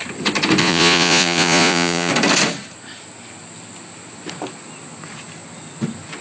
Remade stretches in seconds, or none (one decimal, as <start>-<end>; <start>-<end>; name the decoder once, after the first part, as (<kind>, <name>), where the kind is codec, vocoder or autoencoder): 0.6-2.1 (vocoder, Vocos)